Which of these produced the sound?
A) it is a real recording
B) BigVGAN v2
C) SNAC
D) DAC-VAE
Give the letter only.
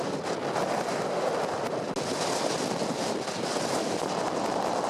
A